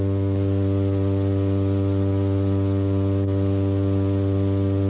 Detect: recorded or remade recorded